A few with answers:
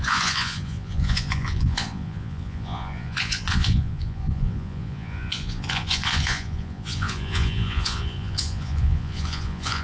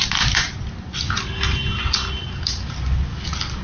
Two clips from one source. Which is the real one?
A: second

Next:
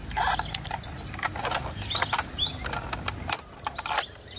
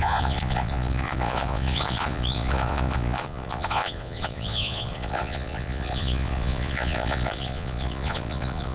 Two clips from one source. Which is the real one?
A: first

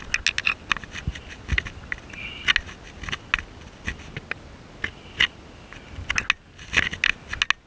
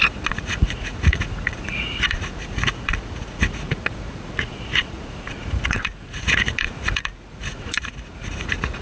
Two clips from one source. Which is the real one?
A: first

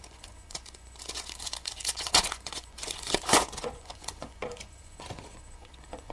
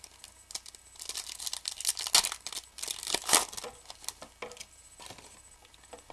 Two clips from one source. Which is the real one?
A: second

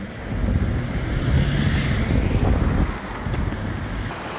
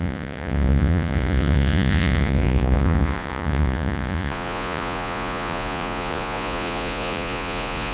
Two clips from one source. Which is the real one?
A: first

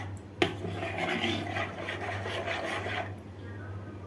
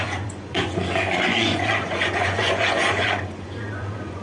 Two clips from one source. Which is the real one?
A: first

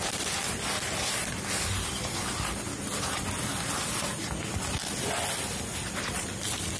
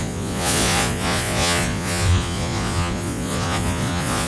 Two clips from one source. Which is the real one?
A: first